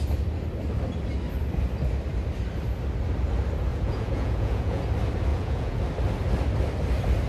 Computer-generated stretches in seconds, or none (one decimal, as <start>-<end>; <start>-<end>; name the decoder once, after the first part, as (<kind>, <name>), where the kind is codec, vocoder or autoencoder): 3.7-4.8 (vocoder, Vocos); 5.3-5.8